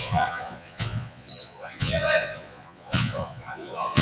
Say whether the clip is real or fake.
fake